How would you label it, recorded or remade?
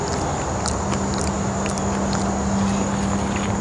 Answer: recorded